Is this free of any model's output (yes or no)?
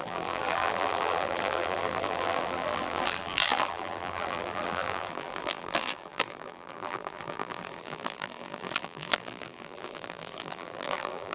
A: no